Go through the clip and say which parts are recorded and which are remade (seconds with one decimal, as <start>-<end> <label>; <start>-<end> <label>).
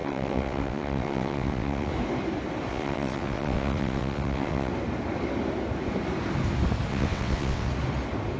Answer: 0.0-1.9 remade; 1.9-2.7 recorded; 2.7-4.7 remade; 4.7-6.9 recorded; 6.9-7.7 remade; 7.7-8.4 recorded